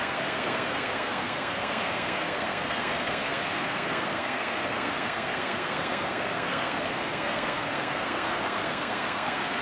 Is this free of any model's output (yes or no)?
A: no